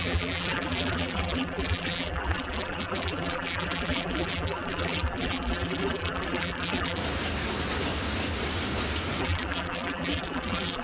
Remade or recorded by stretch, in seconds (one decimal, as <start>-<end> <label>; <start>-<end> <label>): 0.0-7.0 remade; 7.0-9.2 recorded; 9.2-10.8 remade